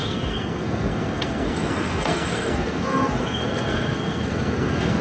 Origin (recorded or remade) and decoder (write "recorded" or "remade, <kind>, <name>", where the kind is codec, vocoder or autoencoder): remade, codec, SNAC